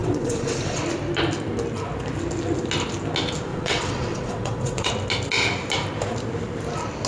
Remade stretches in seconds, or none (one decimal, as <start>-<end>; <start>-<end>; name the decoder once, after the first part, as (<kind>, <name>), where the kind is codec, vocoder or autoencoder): 0.0-0.8 (vocoder, WaveNeXt); 3.5-4.9